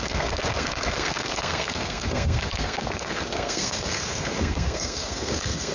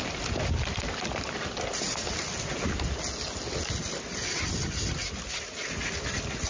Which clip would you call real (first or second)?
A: second